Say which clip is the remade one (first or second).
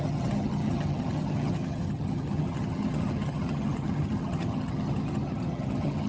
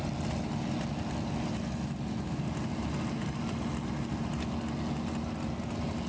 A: first